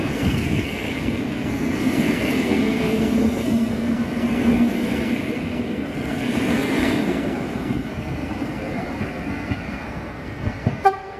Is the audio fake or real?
fake